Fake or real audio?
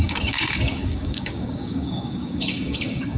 fake